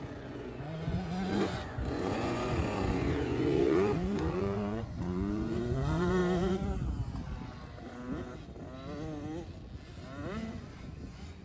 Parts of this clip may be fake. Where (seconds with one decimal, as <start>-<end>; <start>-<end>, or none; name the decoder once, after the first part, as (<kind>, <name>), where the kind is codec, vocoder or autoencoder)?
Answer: 0.0-6.2 (vocoder, Vocos); 10.5-11.4